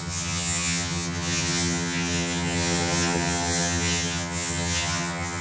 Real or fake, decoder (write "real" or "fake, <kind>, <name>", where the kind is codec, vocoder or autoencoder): fake, vocoder, HiFi-GAN